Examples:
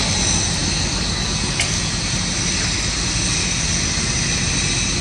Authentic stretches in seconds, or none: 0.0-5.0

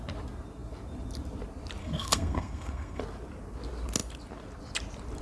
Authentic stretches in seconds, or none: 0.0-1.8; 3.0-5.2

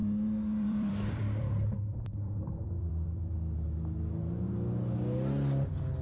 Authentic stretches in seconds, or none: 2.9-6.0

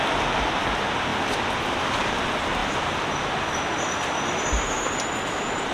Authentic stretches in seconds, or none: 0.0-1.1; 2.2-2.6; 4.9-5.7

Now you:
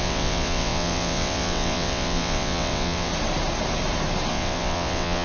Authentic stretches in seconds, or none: 3.1-4.3